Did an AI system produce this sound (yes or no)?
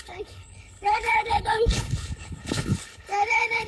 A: yes